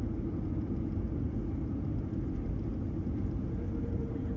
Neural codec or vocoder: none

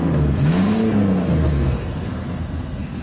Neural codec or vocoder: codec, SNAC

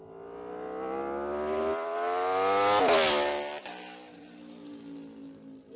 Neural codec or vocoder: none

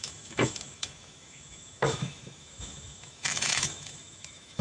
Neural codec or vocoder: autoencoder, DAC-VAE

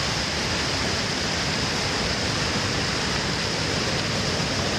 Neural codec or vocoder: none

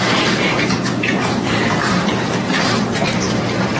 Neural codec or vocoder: vocoder, BigVGAN v2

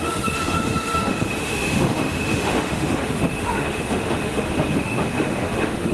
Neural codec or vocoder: autoencoder, DAC-VAE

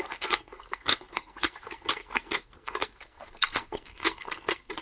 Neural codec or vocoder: codec, SNAC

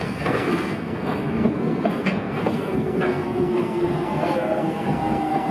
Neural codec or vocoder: codec, SNAC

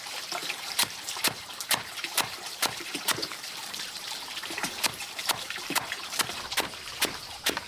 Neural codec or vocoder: vocoder, BigVGAN v2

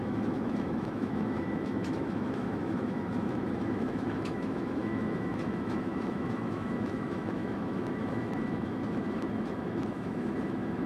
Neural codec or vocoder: autoencoder, DAC-VAE